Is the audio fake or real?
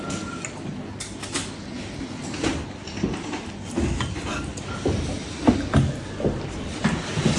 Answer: real